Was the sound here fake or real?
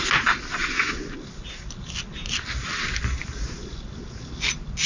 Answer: real